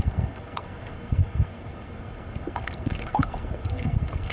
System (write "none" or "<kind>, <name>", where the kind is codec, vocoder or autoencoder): codec, SNAC